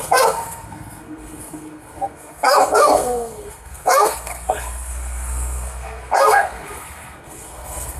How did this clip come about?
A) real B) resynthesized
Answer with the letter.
B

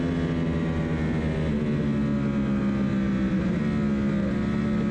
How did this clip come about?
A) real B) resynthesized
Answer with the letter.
A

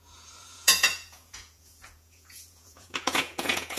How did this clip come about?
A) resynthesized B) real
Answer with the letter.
A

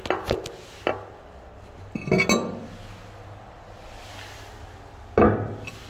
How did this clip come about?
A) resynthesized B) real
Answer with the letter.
B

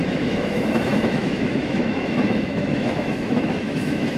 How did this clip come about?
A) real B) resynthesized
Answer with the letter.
B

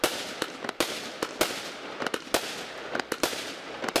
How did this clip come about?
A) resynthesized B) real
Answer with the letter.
B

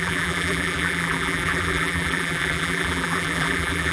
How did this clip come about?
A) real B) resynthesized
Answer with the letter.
B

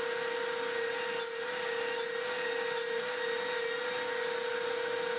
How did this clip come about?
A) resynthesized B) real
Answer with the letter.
B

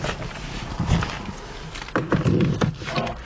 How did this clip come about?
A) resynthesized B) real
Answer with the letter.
B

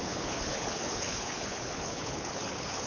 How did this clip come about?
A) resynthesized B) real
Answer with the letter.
A